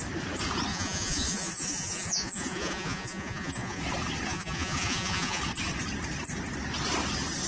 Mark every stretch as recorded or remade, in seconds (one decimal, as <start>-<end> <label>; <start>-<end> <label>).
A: 0.0-0.7 recorded; 0.7-3.8 remade; 3.8-4.3 recorded; 4.3-5.4 remade; 5.4-7.5 recorded